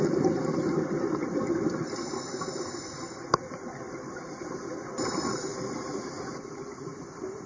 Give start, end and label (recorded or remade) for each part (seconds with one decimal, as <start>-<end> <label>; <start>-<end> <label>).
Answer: 0.0-7.5 recorded